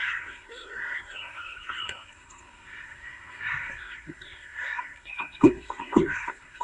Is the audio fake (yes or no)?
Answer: yes